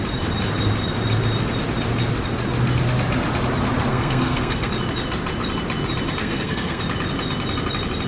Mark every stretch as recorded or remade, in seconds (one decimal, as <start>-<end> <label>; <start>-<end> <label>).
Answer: 0.0-3.9 recorded; 3.9-4.7 remade; 4.7-6.2 recorded; 6.2-6.8 remade; 6.8-8.1 recorded